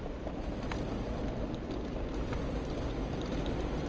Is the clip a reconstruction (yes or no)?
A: no